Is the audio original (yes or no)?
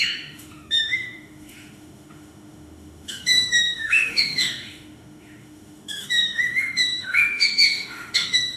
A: no